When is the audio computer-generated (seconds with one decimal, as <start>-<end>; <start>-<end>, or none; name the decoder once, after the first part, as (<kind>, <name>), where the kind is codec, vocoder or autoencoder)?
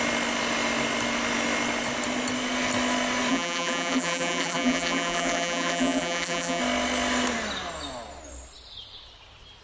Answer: 3.3-6.6 (vocoder, BigVGAN v2)